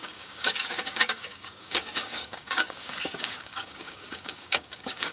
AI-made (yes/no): yes